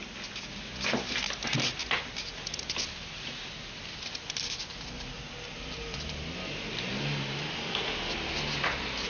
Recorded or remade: recorded